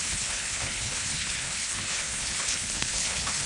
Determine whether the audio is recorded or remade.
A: remade